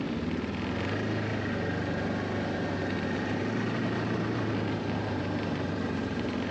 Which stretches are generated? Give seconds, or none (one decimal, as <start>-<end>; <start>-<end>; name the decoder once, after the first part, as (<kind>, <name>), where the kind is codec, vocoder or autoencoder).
2.8-5.8 (vocoder, BigVGAN v2)